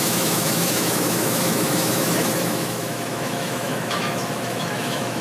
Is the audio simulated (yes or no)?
yes